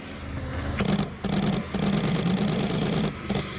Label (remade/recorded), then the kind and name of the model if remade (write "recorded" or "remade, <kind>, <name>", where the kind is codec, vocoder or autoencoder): recorded